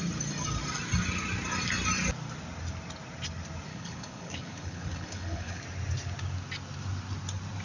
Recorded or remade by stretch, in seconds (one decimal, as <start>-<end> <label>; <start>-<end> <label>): 0.0-3.7 recorded; 3.7-5.6 remade; 5.6-7.6 recorded